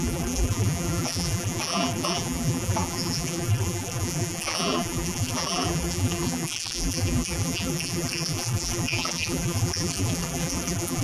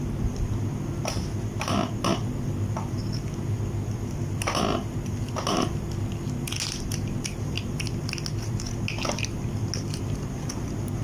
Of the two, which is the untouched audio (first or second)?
second